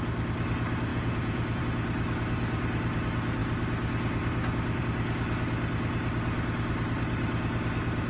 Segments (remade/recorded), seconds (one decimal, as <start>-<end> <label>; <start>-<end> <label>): 0.0-0.9 recorded; 0.9-1.6 remade; 1.6-8.1 recorded